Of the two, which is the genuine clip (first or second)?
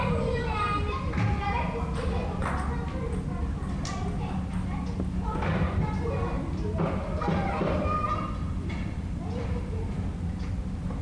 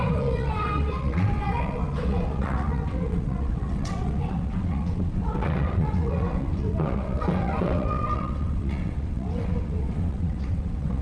first